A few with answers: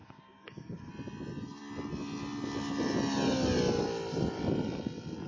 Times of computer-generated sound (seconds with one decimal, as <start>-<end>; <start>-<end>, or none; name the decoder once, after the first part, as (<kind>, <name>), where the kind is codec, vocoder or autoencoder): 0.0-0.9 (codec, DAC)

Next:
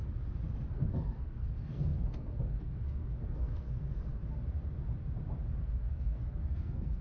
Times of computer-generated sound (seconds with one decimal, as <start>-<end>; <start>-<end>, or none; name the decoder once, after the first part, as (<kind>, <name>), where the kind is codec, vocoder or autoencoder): 0.7-4.2 (codec, SNAC); 5.6-7.0

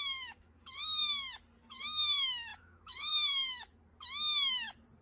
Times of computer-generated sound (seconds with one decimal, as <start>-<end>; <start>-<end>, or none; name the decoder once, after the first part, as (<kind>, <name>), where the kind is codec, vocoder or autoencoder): 0.0-1.0 (autoencoder, DAC-VAE); 1.7-3.8